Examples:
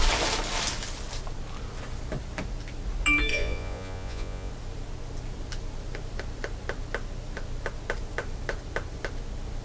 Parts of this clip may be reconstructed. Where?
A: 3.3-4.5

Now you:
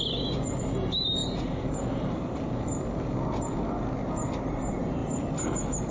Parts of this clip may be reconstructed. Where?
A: 1.2-2.5; 5.0-5.9

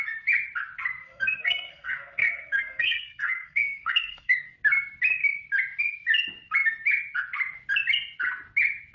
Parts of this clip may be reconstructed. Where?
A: 1.0-4.5

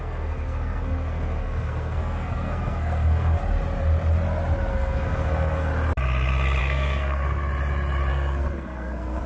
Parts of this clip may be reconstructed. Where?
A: 0.0-3.4; 4.7-5.7; 6.6-7.4; 8.1-9.3

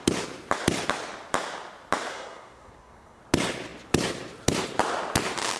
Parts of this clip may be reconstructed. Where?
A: 2.1-3.2

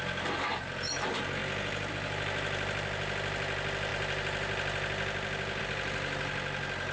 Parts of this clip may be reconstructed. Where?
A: none

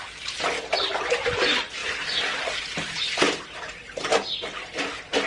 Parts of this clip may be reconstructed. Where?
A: none